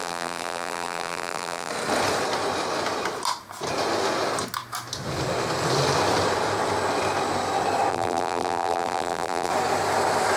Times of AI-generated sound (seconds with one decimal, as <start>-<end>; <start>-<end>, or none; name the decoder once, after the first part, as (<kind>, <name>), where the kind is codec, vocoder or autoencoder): 0.0-1.7 (vocoder, BigVGAN v2); 7.9-9.5